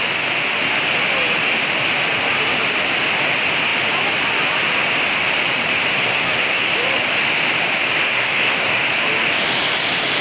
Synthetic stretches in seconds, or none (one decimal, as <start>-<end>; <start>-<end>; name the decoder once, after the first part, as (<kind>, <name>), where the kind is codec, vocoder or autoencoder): 5.9-6.7 (codec, SNAC); 8.0-8.8